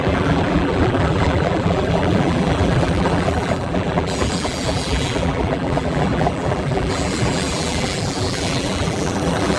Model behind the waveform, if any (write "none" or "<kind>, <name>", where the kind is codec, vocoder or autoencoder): vocoder, BigVGAN v2